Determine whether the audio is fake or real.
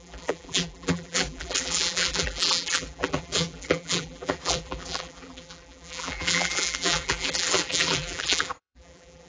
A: fake